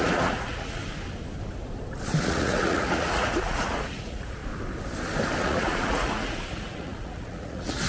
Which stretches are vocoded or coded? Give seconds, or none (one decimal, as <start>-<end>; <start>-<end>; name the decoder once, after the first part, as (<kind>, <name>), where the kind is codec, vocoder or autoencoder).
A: 0.0-0.8 (vocoder, Vocos); 2.2-4.4; 5.4-7.9